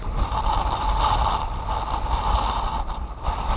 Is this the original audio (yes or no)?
yes